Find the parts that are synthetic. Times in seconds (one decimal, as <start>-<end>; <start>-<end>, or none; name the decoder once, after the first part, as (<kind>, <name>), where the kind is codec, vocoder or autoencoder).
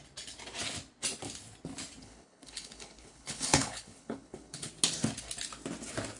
2.0-4.7 (codec, HILCodec)